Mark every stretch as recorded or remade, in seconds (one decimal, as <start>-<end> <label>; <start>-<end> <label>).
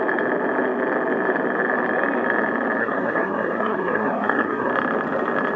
0.0-2.8 recorded; 2.8-4.7 remade; 4.7-5.6 recorded